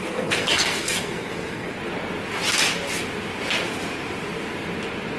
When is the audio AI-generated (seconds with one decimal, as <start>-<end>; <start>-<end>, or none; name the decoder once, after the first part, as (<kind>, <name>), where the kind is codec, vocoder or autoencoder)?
0.0-1.8 (codec, SNAC)